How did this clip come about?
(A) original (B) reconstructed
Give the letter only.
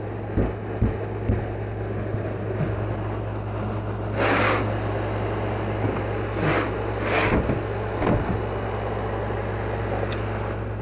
A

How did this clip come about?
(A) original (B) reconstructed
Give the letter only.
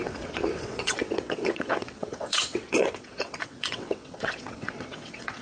B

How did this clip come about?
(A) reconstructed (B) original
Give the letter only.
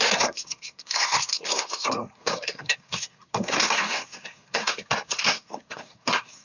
A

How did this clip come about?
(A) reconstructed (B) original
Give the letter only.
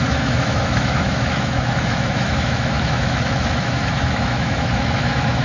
A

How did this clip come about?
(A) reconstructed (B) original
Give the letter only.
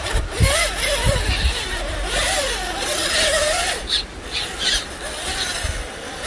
B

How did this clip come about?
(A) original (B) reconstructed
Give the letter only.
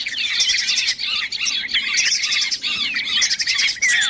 A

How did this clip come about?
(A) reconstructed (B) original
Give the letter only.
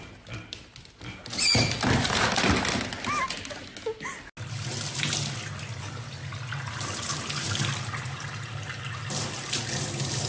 B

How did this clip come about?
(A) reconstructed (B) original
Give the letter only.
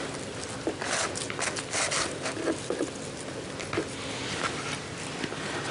B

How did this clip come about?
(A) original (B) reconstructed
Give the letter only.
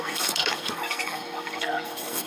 B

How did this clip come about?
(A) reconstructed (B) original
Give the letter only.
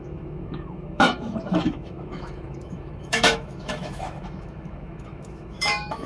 A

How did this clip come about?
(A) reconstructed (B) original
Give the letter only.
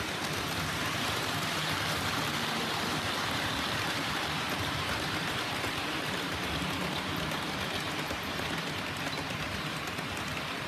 A